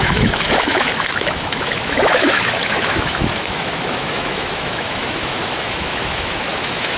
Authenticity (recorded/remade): remade